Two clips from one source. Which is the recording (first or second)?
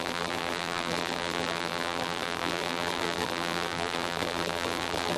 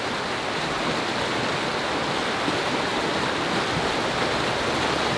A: second